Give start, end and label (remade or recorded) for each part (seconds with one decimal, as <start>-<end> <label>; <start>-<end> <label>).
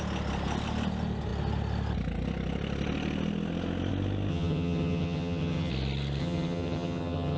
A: 0.0-4.3 recorded; 4.3-5.7 remade; 5.7-6.2 recorded; 6.2-7.4 remade